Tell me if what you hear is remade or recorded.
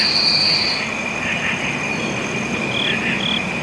recorded